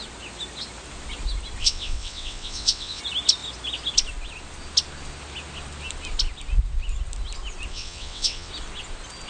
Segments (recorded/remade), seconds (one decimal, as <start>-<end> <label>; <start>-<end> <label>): 0.0-1.6 recorded; 1.6-3.0 remade; 3.0-7.7 recorded; 7.7-8.5 remade; 8.5-9.3 recorded